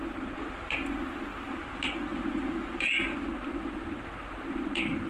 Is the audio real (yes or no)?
yes